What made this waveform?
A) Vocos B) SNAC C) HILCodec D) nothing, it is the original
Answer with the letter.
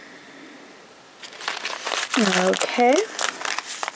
D